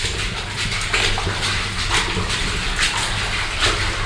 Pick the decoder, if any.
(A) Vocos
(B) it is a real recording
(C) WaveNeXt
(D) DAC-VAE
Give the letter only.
B